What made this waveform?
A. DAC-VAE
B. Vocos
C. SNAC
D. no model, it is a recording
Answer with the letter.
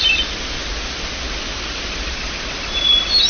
D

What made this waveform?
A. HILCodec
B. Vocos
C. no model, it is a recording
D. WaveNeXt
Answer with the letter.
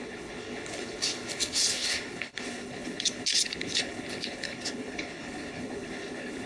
A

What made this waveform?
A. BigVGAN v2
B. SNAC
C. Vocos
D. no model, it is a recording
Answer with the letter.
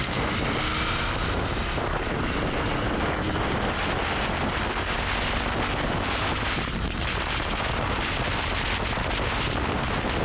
D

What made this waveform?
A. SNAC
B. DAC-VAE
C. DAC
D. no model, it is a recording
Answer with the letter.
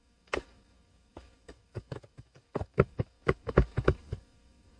C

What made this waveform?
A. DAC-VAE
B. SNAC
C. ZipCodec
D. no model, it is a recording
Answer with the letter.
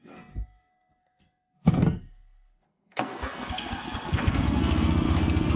B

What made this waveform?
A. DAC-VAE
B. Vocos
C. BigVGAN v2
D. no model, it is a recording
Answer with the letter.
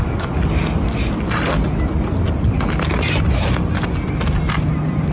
D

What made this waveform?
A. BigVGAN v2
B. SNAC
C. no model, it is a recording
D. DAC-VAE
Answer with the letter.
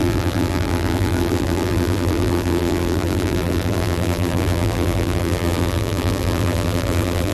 A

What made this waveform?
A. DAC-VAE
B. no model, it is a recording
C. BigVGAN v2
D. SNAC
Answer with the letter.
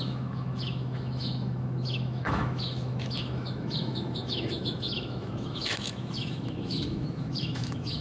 A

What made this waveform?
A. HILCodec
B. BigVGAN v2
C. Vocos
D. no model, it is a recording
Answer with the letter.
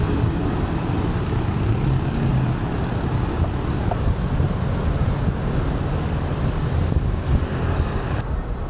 D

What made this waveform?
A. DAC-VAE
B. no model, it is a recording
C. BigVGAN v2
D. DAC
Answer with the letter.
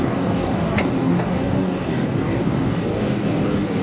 D